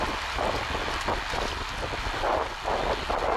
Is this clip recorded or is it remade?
recorded